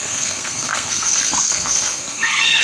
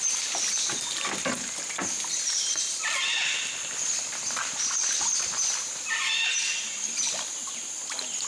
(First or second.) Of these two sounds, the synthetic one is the first